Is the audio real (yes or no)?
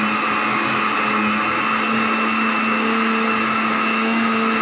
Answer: yes